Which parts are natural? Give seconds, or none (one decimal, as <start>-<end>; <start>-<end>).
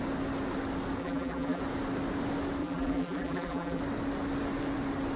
0.0-1.0; 1.6-2.6; 3.8-5.2